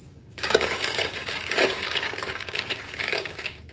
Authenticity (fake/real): fake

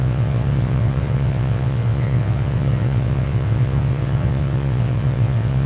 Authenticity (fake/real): fake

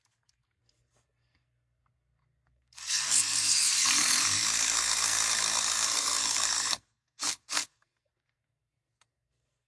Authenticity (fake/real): fake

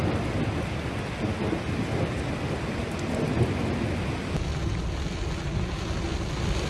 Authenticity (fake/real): real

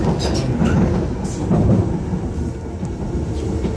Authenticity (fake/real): real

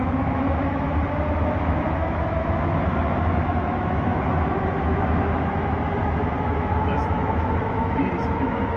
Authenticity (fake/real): fake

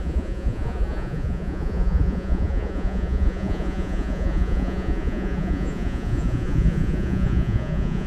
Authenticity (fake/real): fake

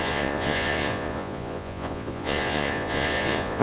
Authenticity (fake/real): fake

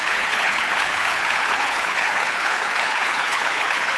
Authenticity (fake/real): fake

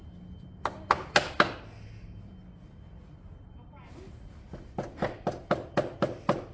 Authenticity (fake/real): real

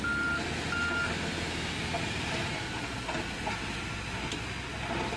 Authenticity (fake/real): real